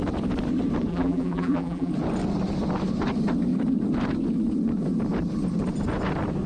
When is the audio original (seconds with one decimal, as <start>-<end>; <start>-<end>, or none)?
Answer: 0.0-0.9; 1.9-6.5

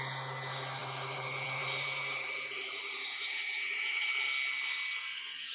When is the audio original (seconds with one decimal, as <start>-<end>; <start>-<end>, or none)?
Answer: 0.0-0.8; 4.1-5.5

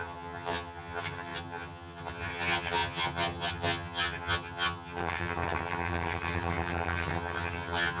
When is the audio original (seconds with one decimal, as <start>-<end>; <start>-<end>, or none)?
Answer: none

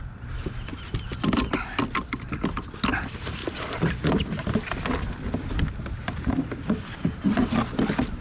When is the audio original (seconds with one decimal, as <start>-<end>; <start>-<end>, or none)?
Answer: 0.0-8.2

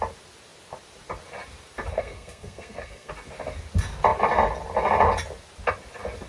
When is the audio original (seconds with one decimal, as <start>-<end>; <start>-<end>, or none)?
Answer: 0.0-1.9; 3.1-6.3